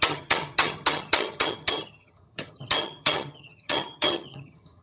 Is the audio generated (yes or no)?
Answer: yes